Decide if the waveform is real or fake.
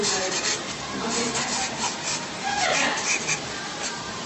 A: fake